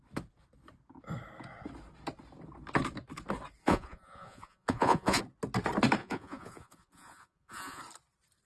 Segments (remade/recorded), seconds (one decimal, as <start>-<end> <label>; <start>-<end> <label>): 0.0-3.6 recorded; 3.6-5.2 remade; 5.2-6.0 recorded; 6.0-7.8 remade; 7.8-8.4 recorded